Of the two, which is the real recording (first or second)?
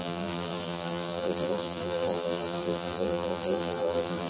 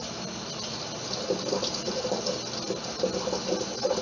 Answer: second